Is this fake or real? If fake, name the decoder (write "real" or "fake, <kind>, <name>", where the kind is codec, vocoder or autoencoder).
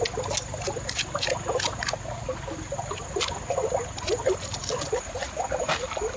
real